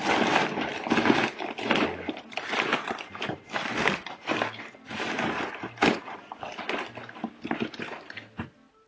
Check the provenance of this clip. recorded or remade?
recorded